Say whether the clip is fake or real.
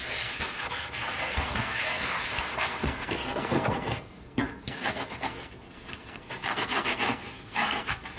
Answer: fake